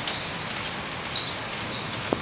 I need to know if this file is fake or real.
real